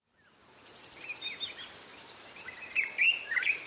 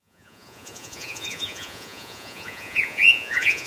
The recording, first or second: first